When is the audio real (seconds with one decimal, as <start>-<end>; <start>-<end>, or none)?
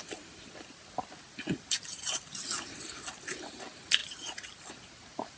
4.0-4.7